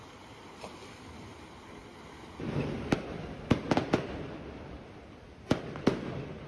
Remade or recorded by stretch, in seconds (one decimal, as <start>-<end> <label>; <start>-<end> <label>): 0.0-6.5 recorded